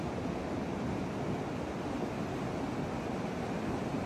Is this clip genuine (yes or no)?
yes